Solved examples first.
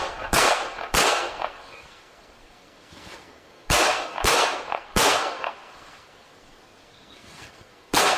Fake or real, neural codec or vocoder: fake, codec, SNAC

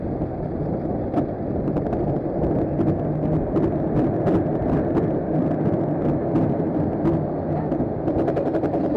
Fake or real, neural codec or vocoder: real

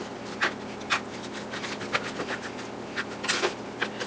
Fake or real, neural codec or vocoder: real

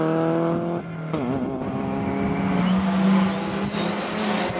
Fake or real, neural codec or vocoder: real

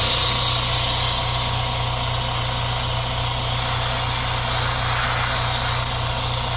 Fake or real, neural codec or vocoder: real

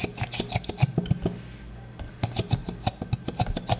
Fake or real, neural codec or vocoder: real